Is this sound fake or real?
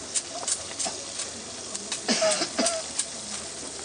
real